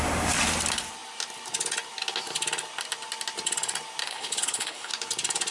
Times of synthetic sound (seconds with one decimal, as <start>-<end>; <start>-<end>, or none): 4.0-4.9